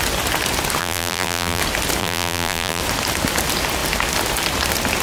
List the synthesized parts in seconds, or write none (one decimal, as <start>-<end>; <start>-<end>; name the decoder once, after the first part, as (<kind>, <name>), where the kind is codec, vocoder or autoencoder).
0.8-1.6 (vocoder, BigVGAN v2); 2.0-2.8